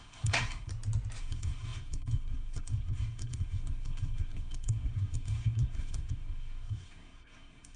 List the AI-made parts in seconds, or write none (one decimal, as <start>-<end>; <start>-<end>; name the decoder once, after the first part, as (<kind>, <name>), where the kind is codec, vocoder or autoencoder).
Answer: 0.0-0.7 (codec, SNAC); 1.2-7.8